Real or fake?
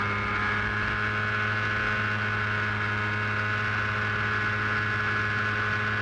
real